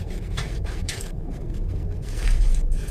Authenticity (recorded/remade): remade